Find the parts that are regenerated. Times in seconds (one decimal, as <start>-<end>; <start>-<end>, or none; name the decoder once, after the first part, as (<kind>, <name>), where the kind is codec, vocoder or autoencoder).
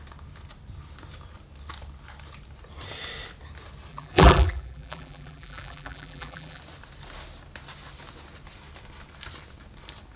3.9-6.6 (vocoder, BigVGAN v2)